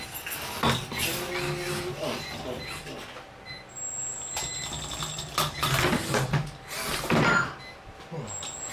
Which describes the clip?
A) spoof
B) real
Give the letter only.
B